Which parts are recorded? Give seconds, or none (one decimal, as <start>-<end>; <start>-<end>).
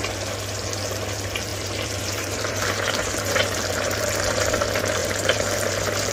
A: 0.0-1.5; 4.5-5.0